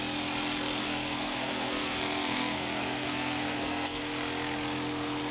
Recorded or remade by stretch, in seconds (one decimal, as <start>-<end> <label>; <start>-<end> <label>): 0.0-0.8 recorded; 0.8-4.0 remade; 4.0-5.3 recorded